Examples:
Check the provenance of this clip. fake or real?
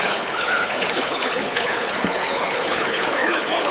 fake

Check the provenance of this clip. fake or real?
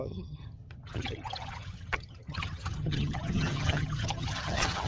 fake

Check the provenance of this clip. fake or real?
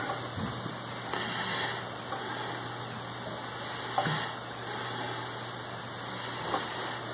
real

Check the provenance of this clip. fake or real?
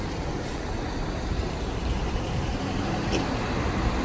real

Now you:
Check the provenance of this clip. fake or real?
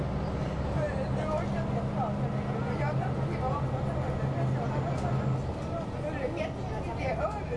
real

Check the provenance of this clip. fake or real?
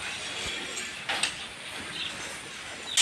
real